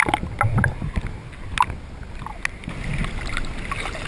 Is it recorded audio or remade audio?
recorded